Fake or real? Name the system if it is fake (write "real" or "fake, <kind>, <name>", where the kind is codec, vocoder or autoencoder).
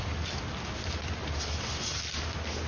real